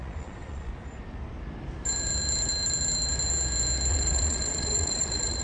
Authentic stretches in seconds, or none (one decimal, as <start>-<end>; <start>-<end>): 0.7-3.9